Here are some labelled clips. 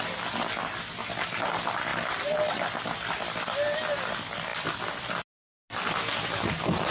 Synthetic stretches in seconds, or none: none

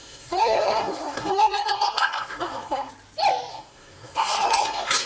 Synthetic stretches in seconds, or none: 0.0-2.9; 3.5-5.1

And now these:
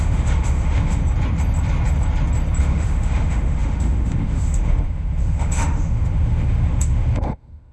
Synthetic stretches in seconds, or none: 0.0-1.0; 2.6-7.7